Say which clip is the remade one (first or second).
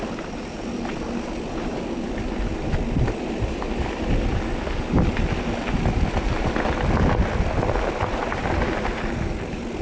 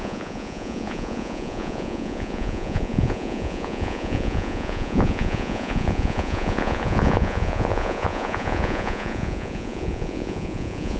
second